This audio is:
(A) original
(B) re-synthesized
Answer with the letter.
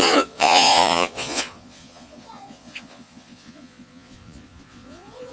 B